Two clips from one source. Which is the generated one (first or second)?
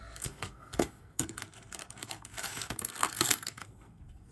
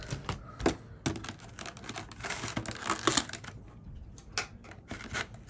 first